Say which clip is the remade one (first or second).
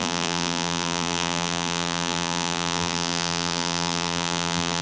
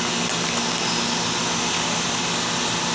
first